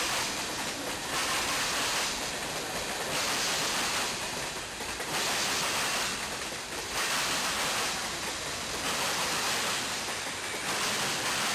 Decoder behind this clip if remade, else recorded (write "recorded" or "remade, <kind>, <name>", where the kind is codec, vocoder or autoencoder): recorded